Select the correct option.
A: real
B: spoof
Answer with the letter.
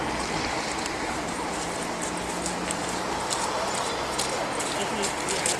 A